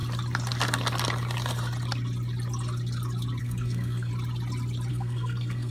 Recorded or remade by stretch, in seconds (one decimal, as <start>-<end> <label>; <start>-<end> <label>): 0.0-3.4 recorded; 3.4-4.1 remade; 4.1-4.9 recorded; 4.9-5.7 remade

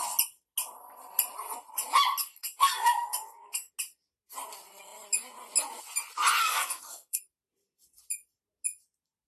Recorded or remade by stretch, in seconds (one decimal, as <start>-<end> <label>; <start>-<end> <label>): 0.0-2.2 recorded; 2.2-3.7 remade; 3.7-6.4 recorded; 6.4-7.2 remade; 7.2-9.3 recorded

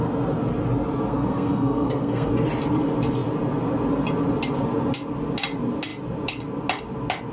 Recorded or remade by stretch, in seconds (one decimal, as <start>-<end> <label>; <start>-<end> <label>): 0.0-1.1 recorded; 1.1-2.3 remade; 2.3-7.3 recorded

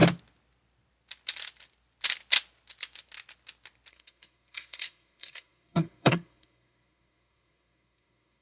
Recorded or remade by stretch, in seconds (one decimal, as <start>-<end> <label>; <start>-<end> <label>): 0.0-3.9 recorded; 3.9-8.4 remade

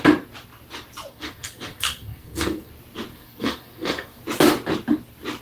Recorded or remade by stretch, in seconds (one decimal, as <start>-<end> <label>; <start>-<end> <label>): 0.0-1.1 recorded; 1.1-2.7 remade; 2.7-3.1 recorded; 3.1-4.2 remade; 4.2-5.4 recorded

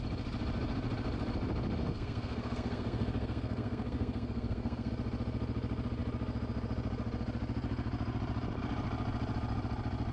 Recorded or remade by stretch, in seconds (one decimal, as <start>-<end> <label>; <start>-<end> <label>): 0.0-1.8 recorded; 1.8-4.9 remade; 4.9-10.1 recorded

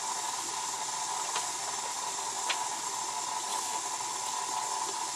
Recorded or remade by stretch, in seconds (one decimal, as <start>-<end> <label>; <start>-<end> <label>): 0.0-5.2 recorded

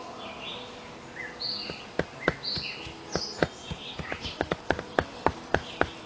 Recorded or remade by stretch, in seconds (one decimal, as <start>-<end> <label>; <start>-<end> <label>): 0.0-6.1 recorded